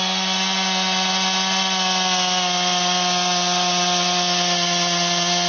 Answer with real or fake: real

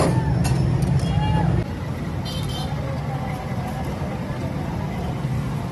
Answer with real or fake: real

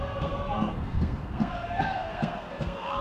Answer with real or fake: fake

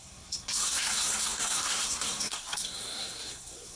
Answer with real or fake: fake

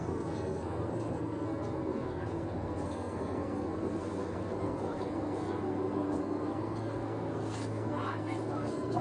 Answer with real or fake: fake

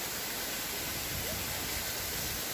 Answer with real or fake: real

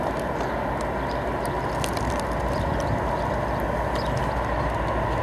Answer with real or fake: real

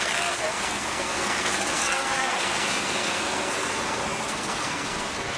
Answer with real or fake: fake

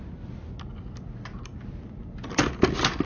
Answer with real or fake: real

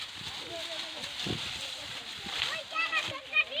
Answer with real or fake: real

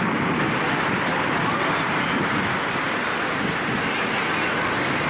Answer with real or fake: real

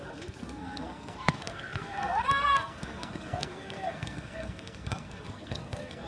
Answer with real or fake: fake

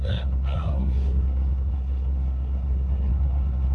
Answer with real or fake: fake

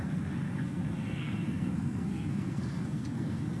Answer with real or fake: fake